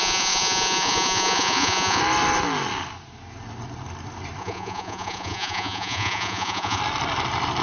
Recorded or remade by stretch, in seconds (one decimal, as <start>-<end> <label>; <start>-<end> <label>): 0.0-2.0 remade; 2.0-4.4 recorded; 4.4-6.8 remade; 6.8-7.6 recorded